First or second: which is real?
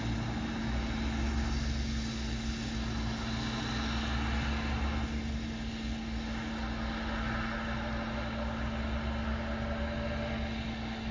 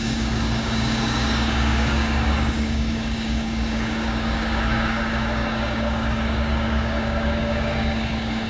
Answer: first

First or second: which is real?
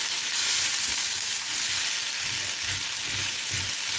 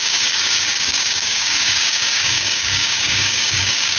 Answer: first